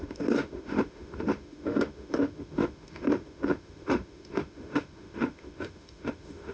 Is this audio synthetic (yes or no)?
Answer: yes